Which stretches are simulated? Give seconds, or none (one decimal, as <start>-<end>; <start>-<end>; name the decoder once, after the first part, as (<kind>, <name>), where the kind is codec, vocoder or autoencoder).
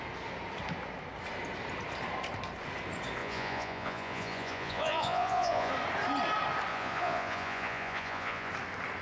3.2-5.7 (vocoder, Vocos); 6.7-8.5